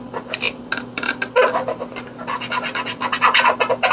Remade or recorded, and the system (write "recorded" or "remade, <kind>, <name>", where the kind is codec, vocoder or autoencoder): recorded